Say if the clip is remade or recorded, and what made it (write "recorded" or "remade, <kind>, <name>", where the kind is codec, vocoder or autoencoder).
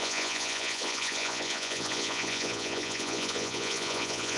remade, vocoder, Vocos